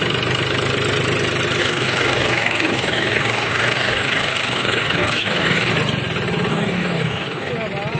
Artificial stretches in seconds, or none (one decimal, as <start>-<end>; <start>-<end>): 1.6-5.7; 6.5-7.5

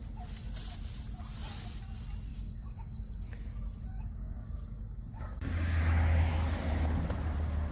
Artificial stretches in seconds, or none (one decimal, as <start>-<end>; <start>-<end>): 2.3-3.1; 3.9-5.8

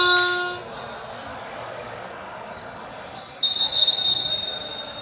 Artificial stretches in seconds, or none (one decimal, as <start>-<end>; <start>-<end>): 1.3-4.3

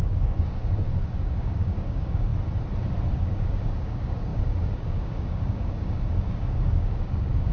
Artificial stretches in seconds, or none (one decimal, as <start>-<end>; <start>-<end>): 0.0-2.3; 3.1-7.5

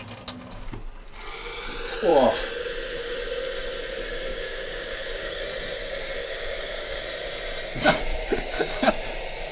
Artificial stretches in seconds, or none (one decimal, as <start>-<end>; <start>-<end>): 4.3-5.4; 6.2-7.0; 8.1-8.9

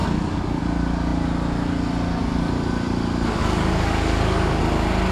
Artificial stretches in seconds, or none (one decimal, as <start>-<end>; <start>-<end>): 0.0-0.6; 3.4-4.6